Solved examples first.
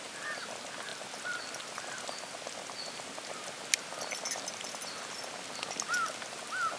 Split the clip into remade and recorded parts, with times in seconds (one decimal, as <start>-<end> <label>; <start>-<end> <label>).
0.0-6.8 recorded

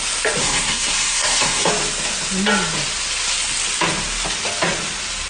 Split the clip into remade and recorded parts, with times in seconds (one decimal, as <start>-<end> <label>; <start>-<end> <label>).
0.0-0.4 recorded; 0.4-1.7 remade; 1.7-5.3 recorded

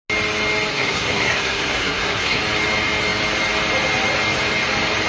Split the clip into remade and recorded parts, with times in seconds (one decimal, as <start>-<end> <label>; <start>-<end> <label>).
0.0-0.7 recorded; 0.7-2.4 remade; 2.4-5.1 recorded